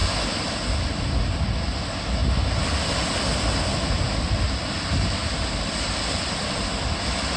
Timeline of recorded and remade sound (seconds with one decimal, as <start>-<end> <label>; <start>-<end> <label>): 0.0-1.1 remade; 1.1-5.2 recorded; 5.2-7.0 remade; 7.0-7.4 recorded